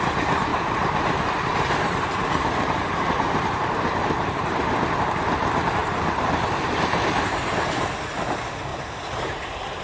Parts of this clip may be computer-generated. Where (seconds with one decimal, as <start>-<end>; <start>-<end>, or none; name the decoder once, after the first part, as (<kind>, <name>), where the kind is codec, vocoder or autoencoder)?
0.5-4.6 (vocoder, BigVGAN v2); 5.8-7.3; 8.7-9.8